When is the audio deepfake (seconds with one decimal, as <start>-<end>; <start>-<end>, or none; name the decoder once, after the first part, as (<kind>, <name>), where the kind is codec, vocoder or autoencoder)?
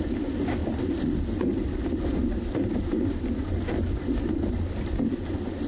none